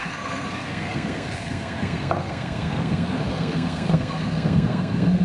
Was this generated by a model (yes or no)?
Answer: yes